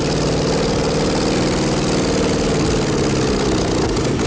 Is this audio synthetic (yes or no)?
no